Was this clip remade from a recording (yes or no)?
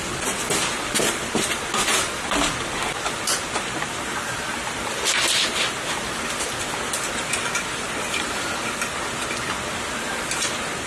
no